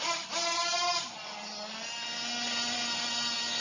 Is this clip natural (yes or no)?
yes